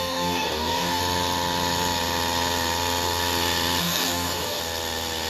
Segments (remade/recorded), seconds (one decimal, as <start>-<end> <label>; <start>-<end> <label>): 0.0-1.0 remade; 1.0-3.8 recorded; 3.8-4.6 remade; 4.6-5.3 recorded